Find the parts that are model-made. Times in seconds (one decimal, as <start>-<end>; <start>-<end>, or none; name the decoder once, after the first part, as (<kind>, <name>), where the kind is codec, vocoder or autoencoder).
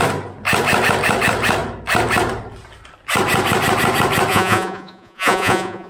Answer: 4.3-5.9 (vocoder, Vocos)